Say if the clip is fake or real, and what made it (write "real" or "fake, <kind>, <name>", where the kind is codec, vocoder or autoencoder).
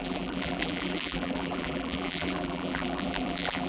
fake, vocoder, BigVGAN v2